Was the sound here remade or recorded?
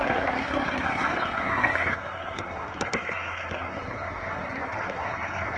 remade